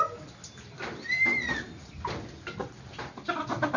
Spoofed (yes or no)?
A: no